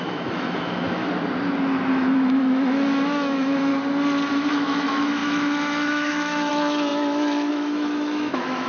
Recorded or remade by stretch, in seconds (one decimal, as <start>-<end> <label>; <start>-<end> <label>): 0.0-1.0 remade; 1.0-1.9 recorded; 1.9-3.7 remade; 3.7-4.3 recorded; 4.3-8.7 remade